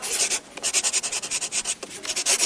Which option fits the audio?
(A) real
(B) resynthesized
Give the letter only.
A